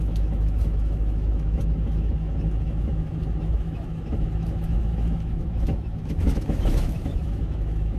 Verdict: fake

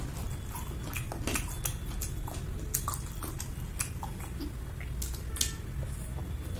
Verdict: real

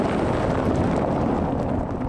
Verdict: real